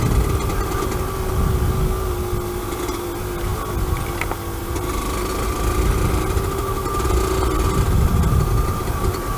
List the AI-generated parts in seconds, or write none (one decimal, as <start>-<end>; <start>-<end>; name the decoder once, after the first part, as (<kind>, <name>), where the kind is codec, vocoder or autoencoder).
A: none